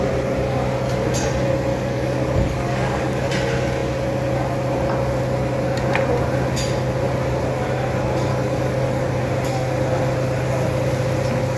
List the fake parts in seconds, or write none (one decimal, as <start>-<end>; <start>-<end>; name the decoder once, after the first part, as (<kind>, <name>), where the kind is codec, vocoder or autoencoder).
1.7-3.3 (codec, DAC); 8.3-9.2